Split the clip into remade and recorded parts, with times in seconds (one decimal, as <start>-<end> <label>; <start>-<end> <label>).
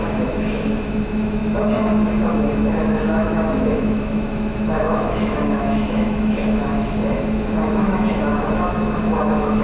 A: 0.0-1.4 remade; 1.4-2.3 recorded; 2.3-9.6 remade